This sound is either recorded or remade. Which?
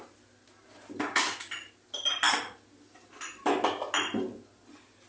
recorded